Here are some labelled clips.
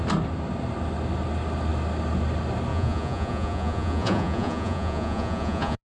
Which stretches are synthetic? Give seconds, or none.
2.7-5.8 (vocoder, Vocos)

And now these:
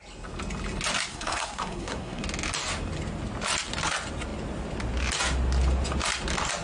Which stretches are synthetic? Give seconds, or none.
1.1-2.2 (codec, SNAC)

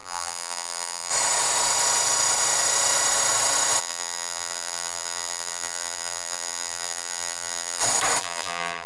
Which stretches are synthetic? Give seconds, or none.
0.0-1.1 (vocoder, BigVGAN v2); 3.8-7.8; 8.2-8.9

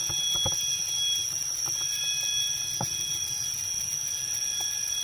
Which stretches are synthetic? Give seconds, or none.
none